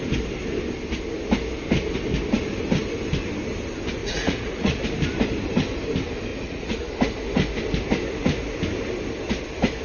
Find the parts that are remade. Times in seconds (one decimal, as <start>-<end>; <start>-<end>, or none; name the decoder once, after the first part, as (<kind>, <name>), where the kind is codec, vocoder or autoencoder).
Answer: 4.0-4.8 (vocoder, Vocos); 6.3-6.9